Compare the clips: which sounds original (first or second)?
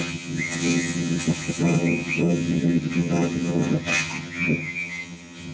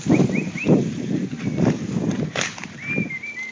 second